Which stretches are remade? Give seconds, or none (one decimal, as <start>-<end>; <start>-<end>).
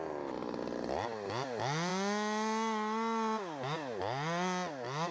none